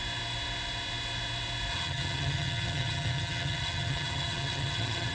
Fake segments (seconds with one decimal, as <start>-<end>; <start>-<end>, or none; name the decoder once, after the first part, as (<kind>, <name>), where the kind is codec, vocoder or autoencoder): 1.7-5.1 (vocoder, HiFi-GAN)